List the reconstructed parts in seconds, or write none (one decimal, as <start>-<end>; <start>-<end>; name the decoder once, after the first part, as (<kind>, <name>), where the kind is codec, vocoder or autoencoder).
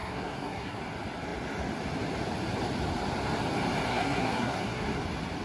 0.0-0.8 (codec, SNAC); 3.9-5.0